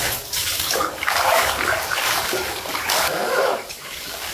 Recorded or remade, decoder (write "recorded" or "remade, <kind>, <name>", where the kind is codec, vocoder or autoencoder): remade, codec, DAC